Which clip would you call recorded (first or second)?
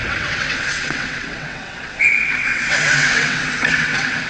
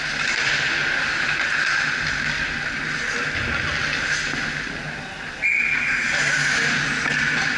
second